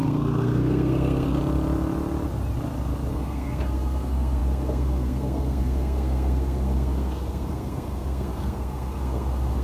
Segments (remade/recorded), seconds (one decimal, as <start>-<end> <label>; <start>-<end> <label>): 0.0-1.4 remade; 1.4-3.1 recorded; 3.1-9.6 remade